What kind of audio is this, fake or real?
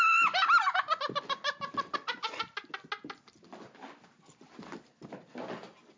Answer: real